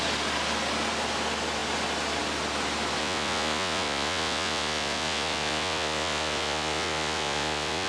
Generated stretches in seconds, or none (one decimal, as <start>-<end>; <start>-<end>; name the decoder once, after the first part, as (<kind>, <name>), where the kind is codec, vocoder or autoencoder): 3.0-7.9 (vocoder, Vocos)